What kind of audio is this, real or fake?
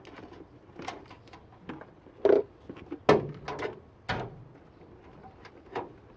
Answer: real